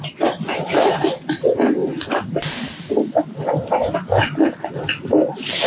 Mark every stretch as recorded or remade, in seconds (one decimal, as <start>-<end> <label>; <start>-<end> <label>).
0.0-5.7 recorded